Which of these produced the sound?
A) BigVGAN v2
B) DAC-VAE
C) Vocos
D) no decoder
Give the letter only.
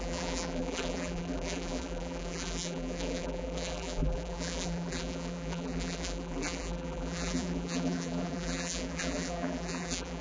A